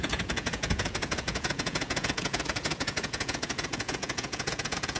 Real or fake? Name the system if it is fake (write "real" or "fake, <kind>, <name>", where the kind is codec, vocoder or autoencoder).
fake, vocoder, Vocos